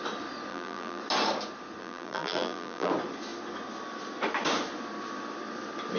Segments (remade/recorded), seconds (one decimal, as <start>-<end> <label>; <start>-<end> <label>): 0.0-0.5 recorded; 0.5-1.0 remade; 1.0-1.8 recorded; 1.8-2.9 remade; 2.9-6.0 recorded